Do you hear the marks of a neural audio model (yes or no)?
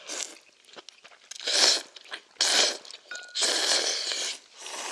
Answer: no